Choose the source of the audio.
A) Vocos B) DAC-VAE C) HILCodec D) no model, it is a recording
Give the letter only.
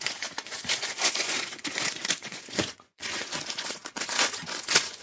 A